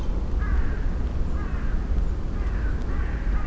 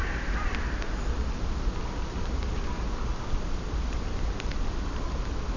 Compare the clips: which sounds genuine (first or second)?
first